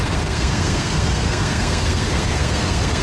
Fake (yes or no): yes